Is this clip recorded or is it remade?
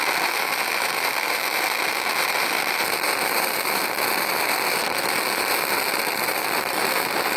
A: remade